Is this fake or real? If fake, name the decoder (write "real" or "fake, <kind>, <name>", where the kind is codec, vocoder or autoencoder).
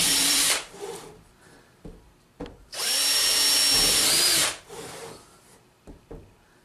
fake, vocoder, BigVGAN v2